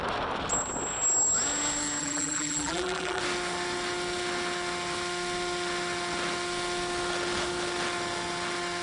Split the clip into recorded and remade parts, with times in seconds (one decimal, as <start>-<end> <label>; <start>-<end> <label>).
0.0-2.0 recorded; 2.0-3.2 remade; 3.2-8.8 recorded